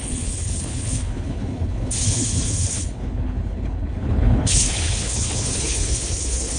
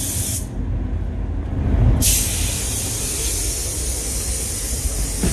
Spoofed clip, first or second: first